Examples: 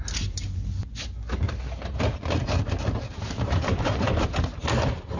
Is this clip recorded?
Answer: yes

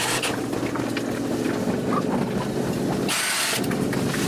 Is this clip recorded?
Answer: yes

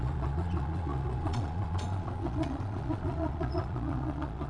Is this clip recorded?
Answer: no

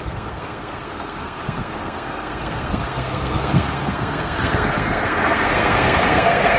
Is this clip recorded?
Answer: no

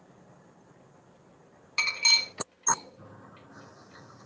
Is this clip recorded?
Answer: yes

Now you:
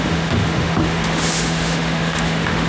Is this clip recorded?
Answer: no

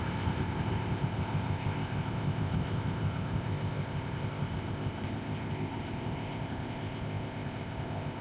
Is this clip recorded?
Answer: no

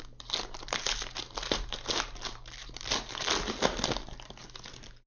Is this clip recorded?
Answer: yes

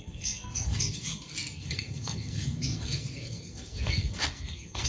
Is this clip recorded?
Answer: no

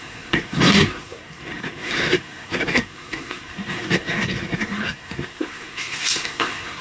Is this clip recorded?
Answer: no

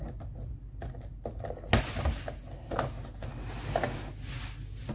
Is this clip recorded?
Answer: yes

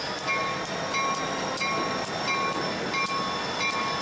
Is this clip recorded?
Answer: yes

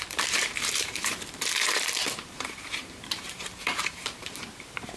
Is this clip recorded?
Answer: no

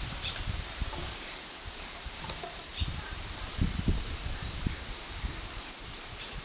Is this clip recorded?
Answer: no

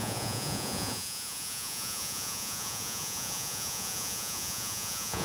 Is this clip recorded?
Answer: no